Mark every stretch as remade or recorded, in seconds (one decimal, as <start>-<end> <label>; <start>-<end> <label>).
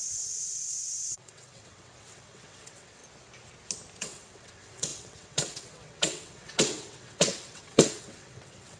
0.0-3.0 remade; 3.0-4.0 recorded; 4.0-8.8 remade